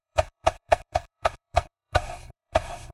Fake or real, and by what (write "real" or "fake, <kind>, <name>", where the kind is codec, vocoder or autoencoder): fake, codec, SNAC